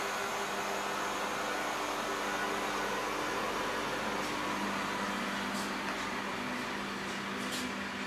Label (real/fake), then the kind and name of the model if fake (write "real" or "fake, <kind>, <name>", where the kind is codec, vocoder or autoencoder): real